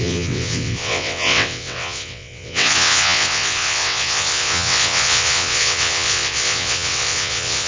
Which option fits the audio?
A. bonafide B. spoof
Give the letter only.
B